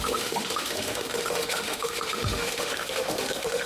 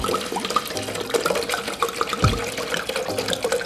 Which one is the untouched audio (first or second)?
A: second